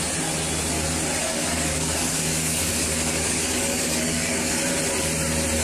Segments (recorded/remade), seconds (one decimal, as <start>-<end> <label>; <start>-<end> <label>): 0.0-1.2 recorded; 1.2-4.6 remade; 4.6-5.6 recorded